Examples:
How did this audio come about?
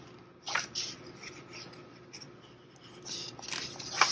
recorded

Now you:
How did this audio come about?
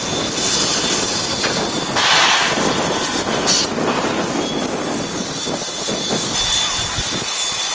recorded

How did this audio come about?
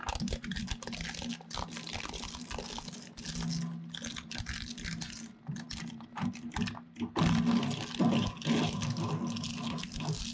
recorded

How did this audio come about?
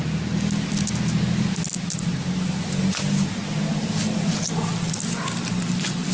recorded